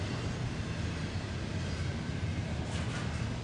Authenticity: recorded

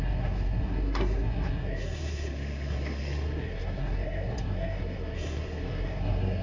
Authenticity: remade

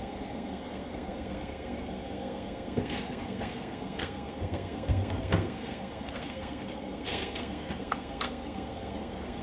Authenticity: remade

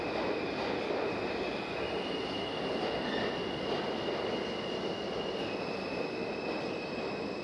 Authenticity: recorded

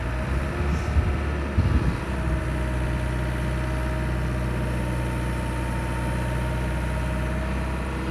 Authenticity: recorded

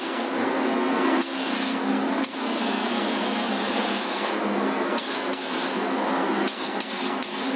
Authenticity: remade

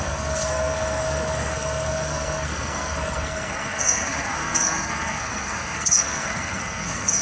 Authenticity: remade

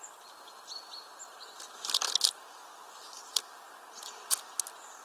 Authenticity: recorded